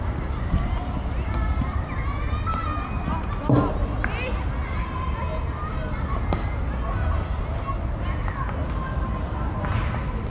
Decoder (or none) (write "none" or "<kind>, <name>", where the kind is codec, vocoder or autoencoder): none